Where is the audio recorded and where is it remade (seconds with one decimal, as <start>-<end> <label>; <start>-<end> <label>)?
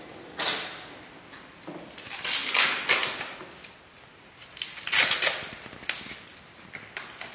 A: 0.0-7.3 recorded